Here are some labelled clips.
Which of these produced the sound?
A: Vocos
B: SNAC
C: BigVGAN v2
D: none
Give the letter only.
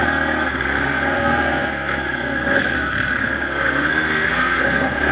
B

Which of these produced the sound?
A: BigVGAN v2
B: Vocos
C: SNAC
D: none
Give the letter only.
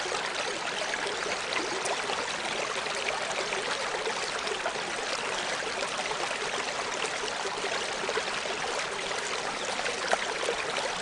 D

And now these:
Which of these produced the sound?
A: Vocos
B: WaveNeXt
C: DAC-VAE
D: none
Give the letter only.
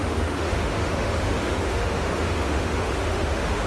C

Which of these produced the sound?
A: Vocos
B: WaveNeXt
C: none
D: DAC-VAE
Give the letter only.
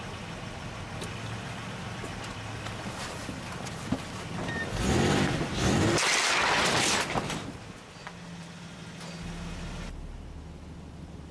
C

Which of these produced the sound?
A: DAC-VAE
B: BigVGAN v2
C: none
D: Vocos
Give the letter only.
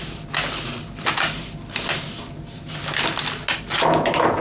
C